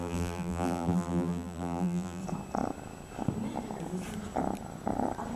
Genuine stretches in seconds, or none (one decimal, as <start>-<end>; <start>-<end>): 2.2-5.4